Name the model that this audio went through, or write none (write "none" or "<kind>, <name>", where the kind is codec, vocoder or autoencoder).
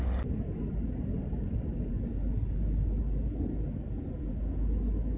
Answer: none